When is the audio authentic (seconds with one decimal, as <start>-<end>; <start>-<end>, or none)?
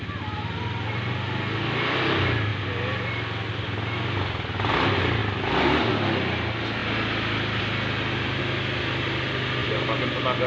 0.0-10.5